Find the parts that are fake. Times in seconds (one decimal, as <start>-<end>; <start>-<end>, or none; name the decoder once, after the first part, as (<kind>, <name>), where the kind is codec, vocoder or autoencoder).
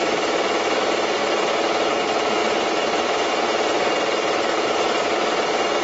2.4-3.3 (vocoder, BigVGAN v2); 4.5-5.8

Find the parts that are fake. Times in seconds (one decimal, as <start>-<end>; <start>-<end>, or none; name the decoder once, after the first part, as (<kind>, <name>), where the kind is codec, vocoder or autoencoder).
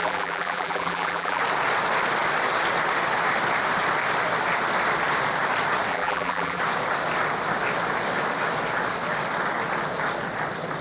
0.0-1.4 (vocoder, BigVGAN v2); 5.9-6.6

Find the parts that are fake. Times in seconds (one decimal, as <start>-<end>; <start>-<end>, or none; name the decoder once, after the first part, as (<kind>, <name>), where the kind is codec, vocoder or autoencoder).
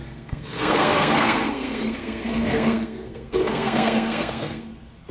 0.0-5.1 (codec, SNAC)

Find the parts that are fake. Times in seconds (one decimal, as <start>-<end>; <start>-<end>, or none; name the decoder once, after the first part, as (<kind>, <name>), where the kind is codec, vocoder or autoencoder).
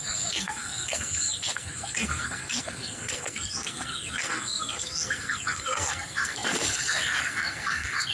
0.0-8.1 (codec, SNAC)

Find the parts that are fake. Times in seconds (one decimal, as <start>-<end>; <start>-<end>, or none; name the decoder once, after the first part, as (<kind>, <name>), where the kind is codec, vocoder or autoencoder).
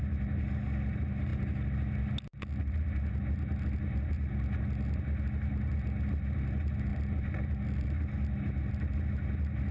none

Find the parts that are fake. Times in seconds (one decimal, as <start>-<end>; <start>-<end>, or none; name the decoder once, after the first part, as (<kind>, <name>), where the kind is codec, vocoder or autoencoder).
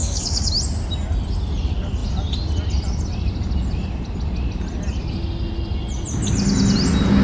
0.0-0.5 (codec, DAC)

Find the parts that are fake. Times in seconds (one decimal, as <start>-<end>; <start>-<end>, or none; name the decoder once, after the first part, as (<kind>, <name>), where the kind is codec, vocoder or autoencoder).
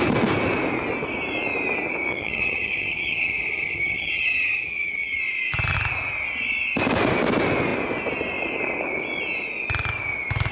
2.1-5.2 (vocoder, HiFi-GAN)